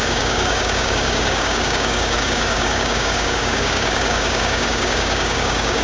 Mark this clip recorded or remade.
remade